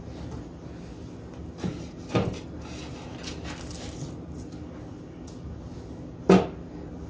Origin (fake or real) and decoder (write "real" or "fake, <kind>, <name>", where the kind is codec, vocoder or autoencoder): real